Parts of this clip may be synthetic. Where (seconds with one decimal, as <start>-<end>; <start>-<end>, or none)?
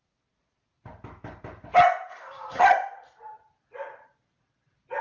2.1-2.6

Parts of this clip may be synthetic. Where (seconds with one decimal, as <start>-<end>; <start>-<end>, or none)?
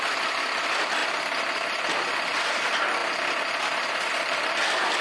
0.0-1.0; 2.4-3.0; 4.1-5.0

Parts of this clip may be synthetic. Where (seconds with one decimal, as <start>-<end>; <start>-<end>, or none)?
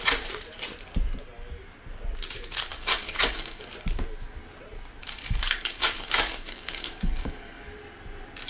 2.7-3.7; 5.0-7.7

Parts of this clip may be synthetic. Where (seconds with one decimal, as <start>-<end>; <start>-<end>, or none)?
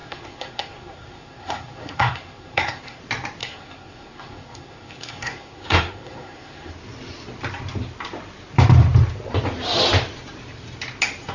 0.0-3.0; 3.4-6.7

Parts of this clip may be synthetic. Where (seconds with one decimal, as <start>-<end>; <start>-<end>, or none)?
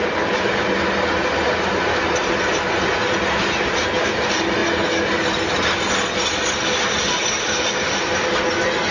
none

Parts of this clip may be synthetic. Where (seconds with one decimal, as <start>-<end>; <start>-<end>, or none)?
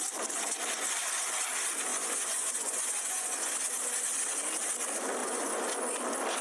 1.9-3.5; 5.2-5.7